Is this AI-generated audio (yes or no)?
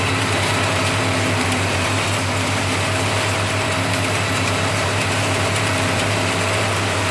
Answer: yes